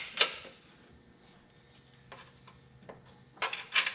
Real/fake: real